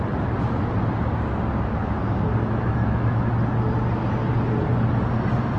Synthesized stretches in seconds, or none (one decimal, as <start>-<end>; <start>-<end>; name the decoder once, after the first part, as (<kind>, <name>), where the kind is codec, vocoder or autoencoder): 1.8-3.3 (autoencoder, DAC-VAE)